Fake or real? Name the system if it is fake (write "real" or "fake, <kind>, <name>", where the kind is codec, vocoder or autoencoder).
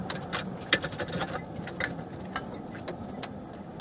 real